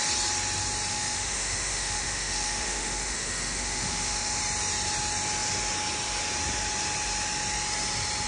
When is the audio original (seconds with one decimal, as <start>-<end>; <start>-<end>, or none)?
0.0-0.9; 4.4-8.3